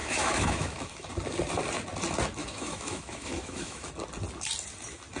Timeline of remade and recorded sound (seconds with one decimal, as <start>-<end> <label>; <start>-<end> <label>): 0.0-1.1 remade; 1.1-2.4 recorded; 2.4-3.9 remade; 3.9-5.2 recorded